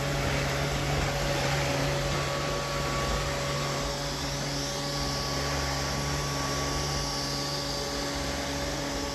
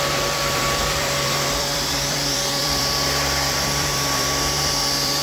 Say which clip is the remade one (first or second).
second